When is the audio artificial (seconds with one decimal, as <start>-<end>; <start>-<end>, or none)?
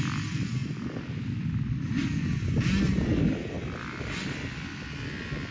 none